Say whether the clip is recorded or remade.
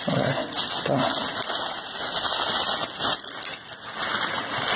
recorded